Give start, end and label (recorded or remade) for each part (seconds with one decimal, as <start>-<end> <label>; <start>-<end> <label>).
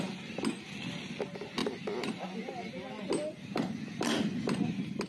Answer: 0.0-5.1 recorded